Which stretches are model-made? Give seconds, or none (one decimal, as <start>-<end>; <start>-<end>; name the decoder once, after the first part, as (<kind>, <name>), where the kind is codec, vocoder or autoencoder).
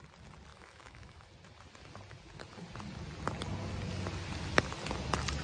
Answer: 0.5-1.3 (autoencoder, DAC-VAE)